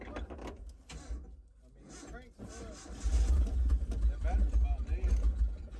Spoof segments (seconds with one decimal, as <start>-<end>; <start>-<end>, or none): none

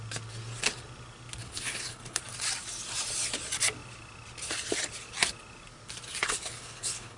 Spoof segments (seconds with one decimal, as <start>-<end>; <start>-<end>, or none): 1.4-2.2; 6.2-7.2

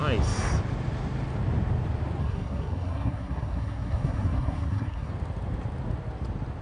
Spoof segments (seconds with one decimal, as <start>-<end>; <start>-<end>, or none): 2.2-5.1

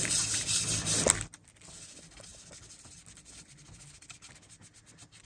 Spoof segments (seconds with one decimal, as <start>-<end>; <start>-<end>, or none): none